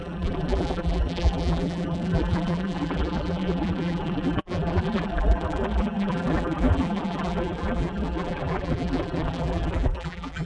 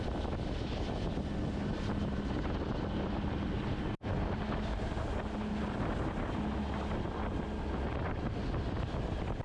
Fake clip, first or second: first